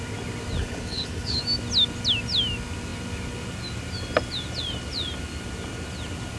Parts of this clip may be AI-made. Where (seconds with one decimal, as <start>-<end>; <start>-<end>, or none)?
0.6-1.4